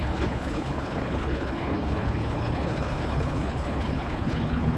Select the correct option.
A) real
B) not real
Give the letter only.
B